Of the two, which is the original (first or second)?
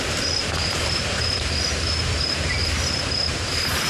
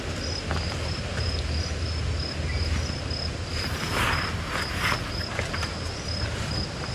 second